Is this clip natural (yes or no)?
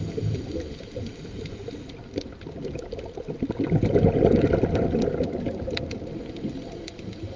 yes